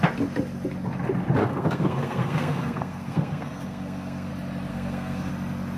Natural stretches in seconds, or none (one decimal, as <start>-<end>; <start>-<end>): 0.0-1.4; 4.3-4.7; 5.3-5.8